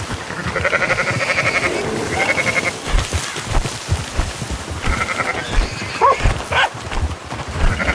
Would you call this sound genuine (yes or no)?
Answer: no